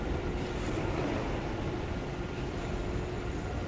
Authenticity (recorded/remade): recorded